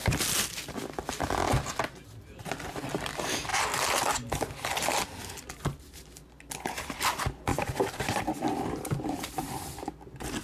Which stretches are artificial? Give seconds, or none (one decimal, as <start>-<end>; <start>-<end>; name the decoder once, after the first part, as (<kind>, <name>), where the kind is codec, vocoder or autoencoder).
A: 0.0-0.9 (vocoder, BigVGAN v2); 7.5-9.9